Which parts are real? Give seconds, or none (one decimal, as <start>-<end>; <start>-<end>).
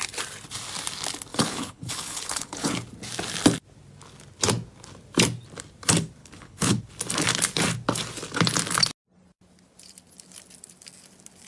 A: 0.0-1.3; 2.7-6.2; 6.8-11.5